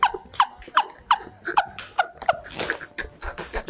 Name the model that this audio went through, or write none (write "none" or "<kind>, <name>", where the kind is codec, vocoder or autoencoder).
none